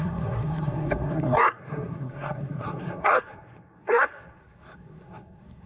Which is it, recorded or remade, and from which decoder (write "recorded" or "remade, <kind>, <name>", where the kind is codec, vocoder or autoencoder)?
remade, codec, SNAC